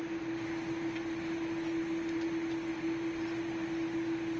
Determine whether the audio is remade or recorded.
recorded